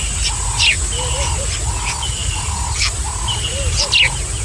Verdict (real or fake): real